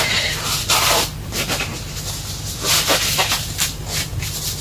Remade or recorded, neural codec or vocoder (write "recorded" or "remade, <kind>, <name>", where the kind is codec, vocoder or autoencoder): recorded